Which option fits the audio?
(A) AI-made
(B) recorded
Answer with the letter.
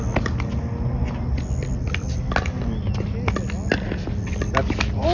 B